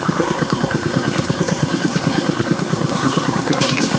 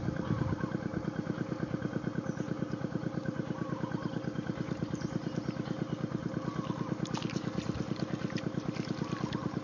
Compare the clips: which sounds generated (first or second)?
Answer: first